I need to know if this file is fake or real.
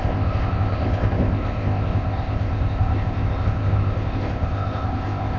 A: fake